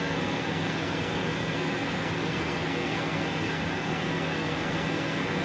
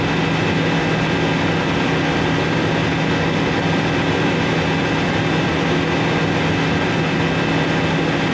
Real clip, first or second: second